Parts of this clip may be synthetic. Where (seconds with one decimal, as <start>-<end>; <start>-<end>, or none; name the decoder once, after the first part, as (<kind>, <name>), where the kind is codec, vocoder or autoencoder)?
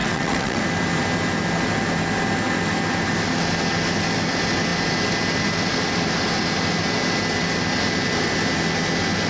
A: 0.0-0.6 (vocoder, WaveNeXt)